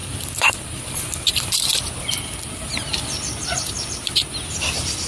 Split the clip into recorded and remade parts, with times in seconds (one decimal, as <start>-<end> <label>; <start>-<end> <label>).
0.0-1.7 remade; 1.7-5.1 recorded